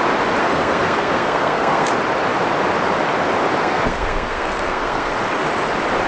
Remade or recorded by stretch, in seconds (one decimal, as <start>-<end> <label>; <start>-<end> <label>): 0.0-0.4 recorded; 0.4-1.9 remade; 1.9-3.6 recorded; 3.6-5.1 remade; 5.1-6.1 recorded